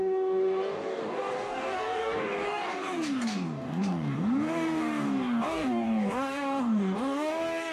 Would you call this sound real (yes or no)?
no